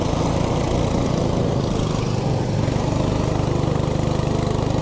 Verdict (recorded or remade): recorded